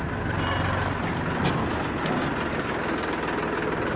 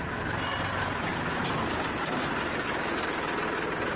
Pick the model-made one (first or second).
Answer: second